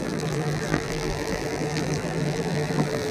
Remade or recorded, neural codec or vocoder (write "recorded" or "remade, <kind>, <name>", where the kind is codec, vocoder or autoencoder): remade, vocoder, BigVGAN v2